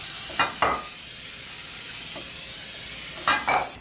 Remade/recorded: recorded